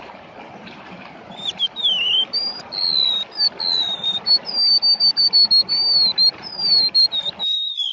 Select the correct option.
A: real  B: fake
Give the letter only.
A